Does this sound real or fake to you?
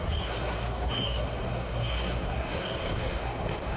fake